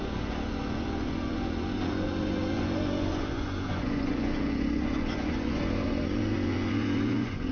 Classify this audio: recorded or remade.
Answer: remade